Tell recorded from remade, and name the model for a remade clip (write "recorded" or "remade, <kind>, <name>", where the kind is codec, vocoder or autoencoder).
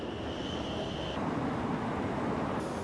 recorded